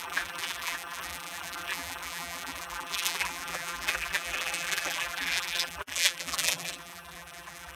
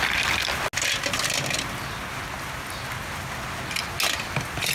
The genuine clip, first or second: second